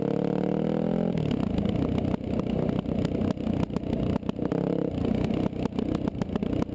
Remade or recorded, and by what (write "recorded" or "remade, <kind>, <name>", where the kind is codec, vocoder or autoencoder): recorded